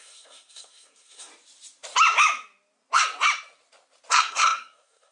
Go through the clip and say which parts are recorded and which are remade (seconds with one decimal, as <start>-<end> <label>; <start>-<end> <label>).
0.0-1.3 remade; 1.3-4.1 recorded; 4.1-5.1 remade